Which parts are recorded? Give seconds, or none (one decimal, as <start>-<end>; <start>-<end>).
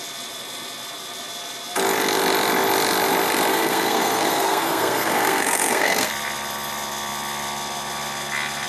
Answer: 0.0-3.5; 6.1-8.7